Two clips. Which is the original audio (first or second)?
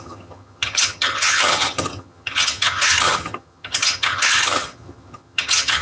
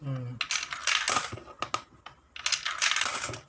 second